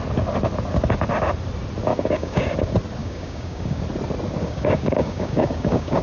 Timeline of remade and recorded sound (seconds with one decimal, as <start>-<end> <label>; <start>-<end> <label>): 0.0-1.9 recorded; 1.9-2.4 remade; 2.4-3.0 recorded; 3.0-3.8 remade; 3.8-4.4 recorded; 4.4-6.0 remade